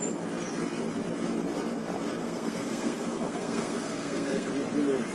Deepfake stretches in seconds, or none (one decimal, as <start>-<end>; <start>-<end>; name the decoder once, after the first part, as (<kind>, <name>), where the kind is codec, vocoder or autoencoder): 2.2-4.5 (codec, SNAC)

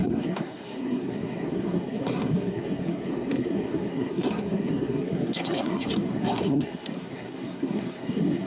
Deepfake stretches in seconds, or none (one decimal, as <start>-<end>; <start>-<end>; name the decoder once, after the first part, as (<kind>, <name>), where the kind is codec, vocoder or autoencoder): 0.0-8.5 (codec, SNAC)

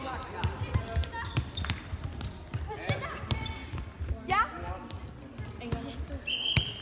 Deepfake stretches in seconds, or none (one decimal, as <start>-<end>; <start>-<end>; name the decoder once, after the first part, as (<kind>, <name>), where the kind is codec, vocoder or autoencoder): none

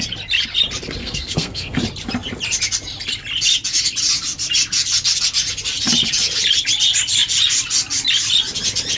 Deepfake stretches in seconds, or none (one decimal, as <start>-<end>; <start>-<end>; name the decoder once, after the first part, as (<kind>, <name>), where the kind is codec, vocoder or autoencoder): 1.0-1.8 (codec, SNAC)

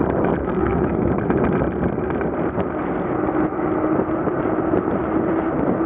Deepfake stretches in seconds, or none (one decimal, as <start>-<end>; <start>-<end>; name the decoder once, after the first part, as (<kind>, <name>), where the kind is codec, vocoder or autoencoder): 0.4-1.1 (codec, SNAC)

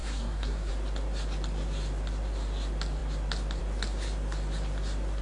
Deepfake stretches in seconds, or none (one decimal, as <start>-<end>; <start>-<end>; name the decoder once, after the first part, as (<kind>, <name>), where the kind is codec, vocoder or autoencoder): 0.0-0.7 (codec, SNAC)